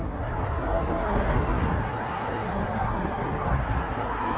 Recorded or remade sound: remade